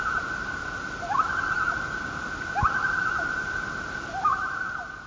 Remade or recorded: recorded